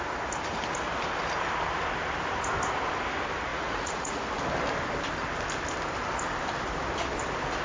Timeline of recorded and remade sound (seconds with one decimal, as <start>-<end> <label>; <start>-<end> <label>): 0.0-3.5 recorded; 3.5-4.2 remade; 4.2-7.6 recorded